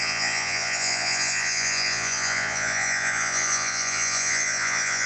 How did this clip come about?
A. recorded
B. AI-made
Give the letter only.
B